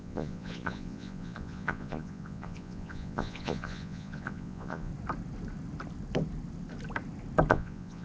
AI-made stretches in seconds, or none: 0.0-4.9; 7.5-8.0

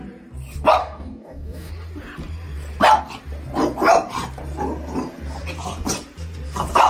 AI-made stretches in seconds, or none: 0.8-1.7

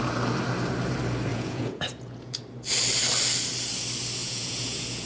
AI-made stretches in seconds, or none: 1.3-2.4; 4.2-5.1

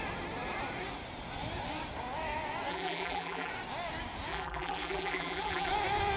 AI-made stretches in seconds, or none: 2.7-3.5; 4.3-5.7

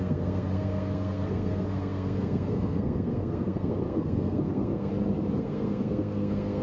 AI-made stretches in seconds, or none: 0.0-4.9; 5.4-6.6

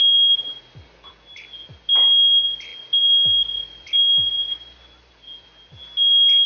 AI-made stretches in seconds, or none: none

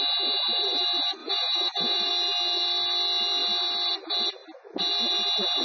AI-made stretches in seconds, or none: 1.2-2.1